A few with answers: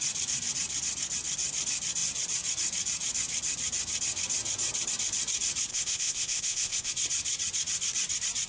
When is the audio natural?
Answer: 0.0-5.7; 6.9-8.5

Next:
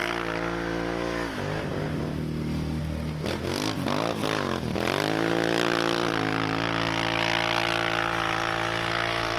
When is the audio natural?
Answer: 0.0-9.4